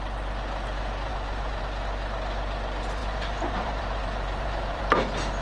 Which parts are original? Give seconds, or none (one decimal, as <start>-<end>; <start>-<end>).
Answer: 0.0-1.1; 1.6-3.0; 4.8-5.4